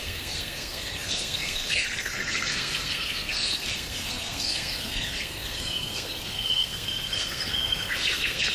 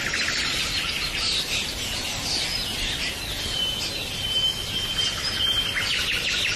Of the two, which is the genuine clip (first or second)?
second